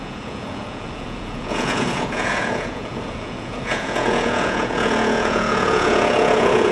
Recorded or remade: remade